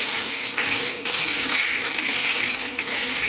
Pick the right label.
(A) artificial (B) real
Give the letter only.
A